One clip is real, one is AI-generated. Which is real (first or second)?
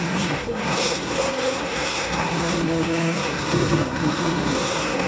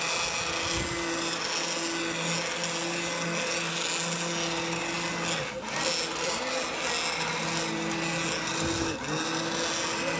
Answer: second